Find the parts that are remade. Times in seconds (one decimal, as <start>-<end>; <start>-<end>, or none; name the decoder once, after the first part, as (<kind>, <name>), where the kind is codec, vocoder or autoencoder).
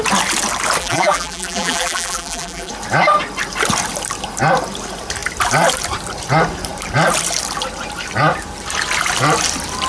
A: 0.8-2.7 (vocoder, BigVGAN v2)